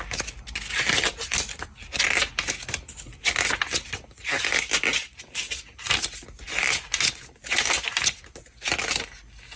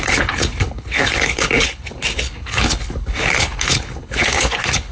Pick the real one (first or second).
first